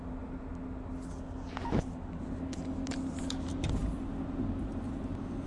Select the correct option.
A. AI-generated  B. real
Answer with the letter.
B